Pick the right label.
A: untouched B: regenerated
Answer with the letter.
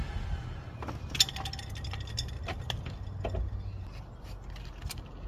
A